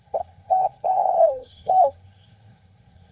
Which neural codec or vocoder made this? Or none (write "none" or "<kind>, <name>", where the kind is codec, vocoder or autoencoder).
codec, SNAC